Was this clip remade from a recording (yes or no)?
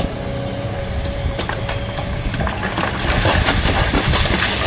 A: no